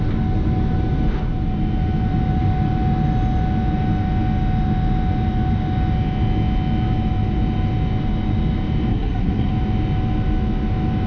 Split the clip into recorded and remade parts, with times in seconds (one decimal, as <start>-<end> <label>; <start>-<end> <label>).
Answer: 0.0-8.9 recorded; 8.9-9.5 remade; 9.5-11.1 recorded